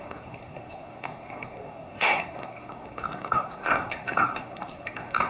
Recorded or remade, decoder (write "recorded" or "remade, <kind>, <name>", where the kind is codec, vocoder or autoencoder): remade, codec, SNAC